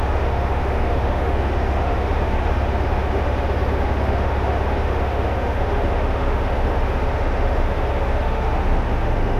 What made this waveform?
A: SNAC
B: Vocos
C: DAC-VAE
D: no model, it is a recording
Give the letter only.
C